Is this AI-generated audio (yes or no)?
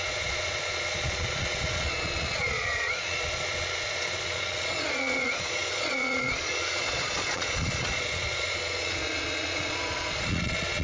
yes